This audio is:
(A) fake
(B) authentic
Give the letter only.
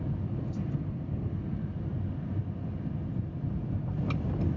B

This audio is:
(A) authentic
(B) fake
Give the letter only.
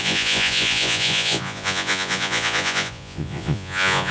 B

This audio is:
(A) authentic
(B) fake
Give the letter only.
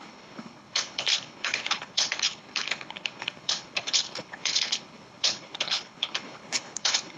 B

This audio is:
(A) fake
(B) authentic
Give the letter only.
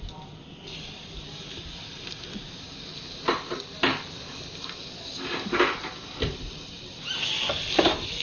B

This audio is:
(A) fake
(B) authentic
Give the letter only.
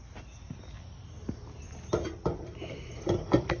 B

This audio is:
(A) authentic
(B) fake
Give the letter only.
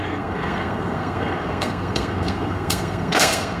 B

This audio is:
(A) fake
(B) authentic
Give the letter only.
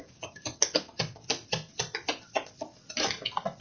B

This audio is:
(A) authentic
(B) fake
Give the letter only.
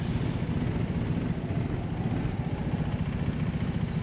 A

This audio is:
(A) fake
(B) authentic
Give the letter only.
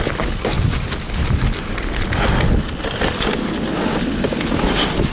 B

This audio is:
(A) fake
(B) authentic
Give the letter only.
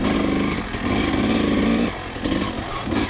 B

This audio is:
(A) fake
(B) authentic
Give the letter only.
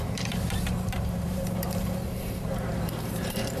A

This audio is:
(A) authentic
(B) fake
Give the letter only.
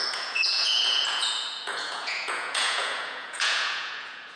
B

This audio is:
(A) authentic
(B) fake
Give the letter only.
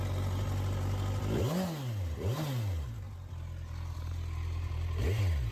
A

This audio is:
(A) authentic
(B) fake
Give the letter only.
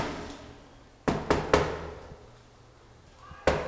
A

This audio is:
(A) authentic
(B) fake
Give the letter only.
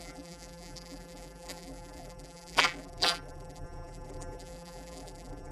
B